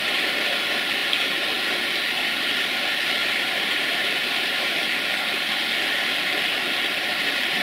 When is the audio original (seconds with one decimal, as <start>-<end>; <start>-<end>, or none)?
0.0-3.2; 4.8-7.6